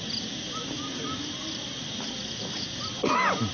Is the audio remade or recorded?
recorded